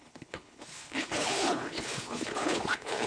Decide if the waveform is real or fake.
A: fake